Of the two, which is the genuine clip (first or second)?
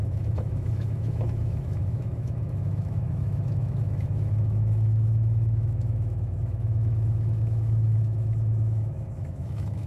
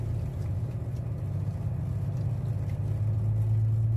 second